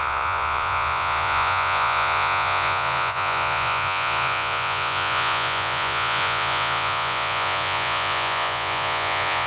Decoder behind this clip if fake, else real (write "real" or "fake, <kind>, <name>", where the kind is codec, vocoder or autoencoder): fake, vocoder, Vocos